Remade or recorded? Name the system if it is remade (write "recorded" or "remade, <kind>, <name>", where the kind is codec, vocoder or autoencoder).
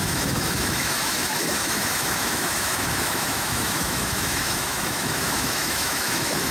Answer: remade, autoencoder, DAC-VAE